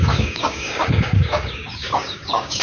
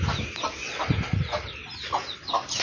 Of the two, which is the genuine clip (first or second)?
second